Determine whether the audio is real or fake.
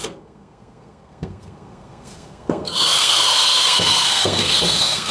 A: fake